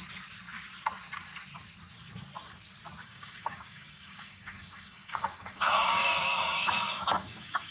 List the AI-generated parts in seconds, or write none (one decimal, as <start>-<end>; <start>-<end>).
3.0-7.7